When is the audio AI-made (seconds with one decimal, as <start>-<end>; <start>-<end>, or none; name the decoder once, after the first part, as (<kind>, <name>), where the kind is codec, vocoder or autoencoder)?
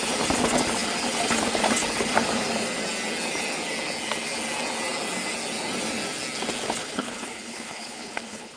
6.8-8.6 (codec, HILCodec)